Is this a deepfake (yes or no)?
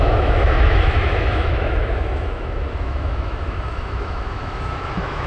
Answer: yes